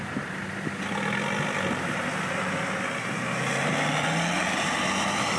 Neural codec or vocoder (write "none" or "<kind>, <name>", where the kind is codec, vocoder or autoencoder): none